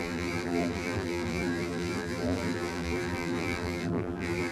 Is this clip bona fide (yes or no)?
no